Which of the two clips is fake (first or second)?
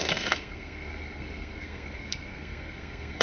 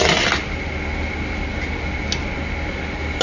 first